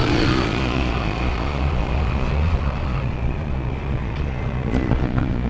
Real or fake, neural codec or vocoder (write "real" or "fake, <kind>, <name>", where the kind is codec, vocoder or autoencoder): fake, vocoder, Vocos